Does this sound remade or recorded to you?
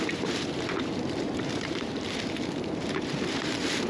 remade